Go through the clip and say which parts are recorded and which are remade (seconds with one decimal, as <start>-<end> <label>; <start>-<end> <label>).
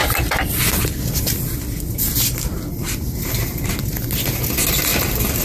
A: 0.0-3.2 remade; 3.2-4.9 recorded; 4.9-5.4 remade